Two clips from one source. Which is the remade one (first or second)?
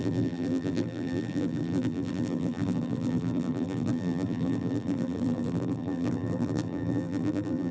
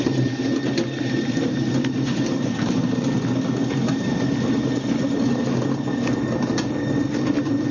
first